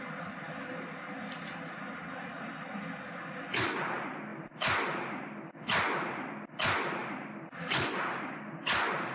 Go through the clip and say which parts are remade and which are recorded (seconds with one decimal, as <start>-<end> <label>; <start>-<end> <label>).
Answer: 0.0-9.1 recorded